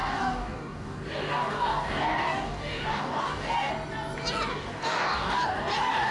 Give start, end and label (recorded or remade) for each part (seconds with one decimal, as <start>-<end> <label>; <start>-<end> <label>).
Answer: 0.0-3.7 remade; 3.7-4.5 recorded; 4.5-6.1 remade